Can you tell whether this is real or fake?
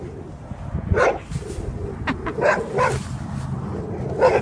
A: real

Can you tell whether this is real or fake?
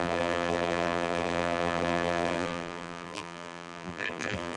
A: fake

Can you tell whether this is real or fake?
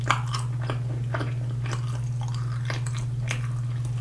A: real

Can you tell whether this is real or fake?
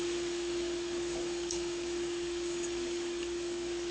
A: fake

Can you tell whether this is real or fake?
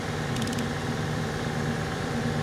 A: fake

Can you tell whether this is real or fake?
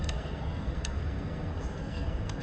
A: fake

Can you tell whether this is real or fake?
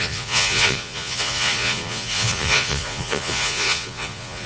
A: fake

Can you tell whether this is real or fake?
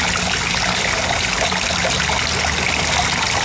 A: real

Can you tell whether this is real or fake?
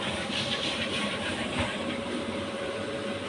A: fake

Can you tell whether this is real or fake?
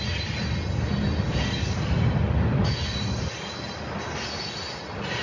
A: real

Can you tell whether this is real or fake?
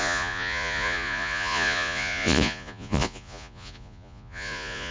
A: fake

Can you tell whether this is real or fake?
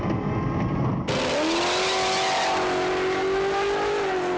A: real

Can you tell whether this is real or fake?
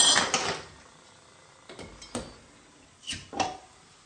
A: real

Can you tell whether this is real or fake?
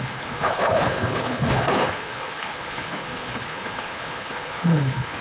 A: fake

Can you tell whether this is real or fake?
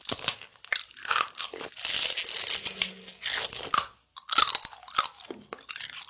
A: real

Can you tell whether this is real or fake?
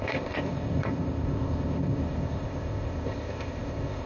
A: fake